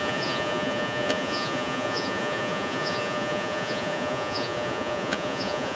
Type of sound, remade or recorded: remade